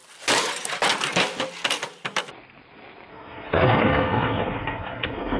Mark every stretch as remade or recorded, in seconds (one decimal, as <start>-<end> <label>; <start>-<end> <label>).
0.0-3.1 recorded; 3.1-5.4 remade